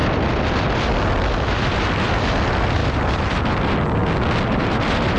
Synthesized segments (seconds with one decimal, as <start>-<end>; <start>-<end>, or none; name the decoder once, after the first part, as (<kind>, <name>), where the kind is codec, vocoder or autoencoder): none